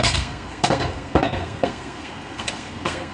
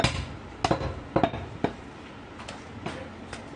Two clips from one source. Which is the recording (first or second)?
second